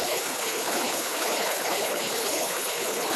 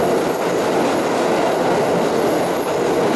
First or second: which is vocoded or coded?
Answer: first